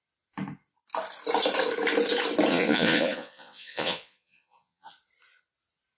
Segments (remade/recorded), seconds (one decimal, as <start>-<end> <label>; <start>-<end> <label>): 0.0-2.5 recorded; 2.5-4.9 remade; 4.9-6.0 recorded

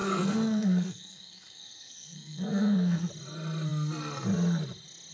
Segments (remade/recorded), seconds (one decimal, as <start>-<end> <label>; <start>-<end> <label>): 0.0-3.1 remade; 3.1-5.1 recorded

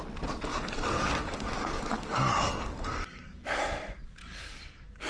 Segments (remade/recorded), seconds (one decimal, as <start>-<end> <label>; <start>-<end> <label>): 0.0-0.5 recorded; 0.5-3.6 remade; 3.6-4.2 recorded; 4.2-5.1 remade

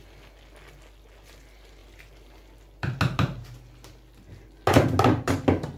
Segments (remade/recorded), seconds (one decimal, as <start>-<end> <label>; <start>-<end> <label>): 0.0-5.8 recorded

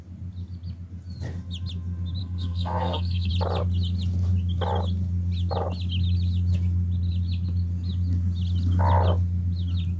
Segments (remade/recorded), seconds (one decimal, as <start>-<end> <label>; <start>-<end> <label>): 0.0-2.2 recorded; 2.2-3.3 remade; 3.3-10.0 recorded

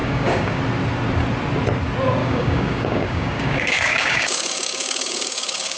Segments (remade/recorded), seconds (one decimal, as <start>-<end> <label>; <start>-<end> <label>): 0.0-0.6 remade; 0.6-2.2 recorded; 2.2-5.8 remade

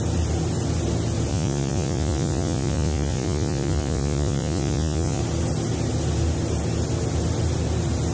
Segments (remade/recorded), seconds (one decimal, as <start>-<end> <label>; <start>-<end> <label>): 0.0-1.3 recorded; 1.3-5.2 remade; 5.2-8.1 recorded

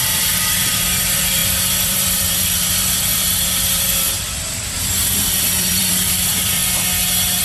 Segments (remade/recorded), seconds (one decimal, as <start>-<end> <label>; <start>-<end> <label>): 0.0-6.6 remade; 6.6-7.4 recorded